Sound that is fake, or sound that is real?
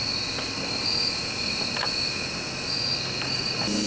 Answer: real